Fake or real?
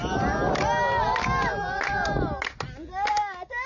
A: real